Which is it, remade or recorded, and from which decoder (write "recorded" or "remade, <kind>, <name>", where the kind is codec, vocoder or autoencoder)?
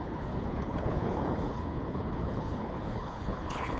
remade, codec, HILCodec